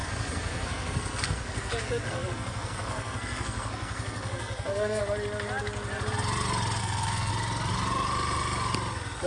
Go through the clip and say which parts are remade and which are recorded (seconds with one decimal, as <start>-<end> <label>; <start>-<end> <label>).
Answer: 0.0-5.0 remade; 5.0-6.8 recorded; 6.8-7.3 remade; 7.3-9.3 recorded